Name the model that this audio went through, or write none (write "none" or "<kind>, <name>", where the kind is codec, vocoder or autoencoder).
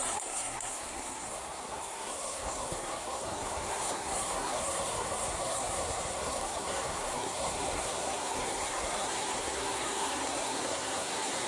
codec, SNAC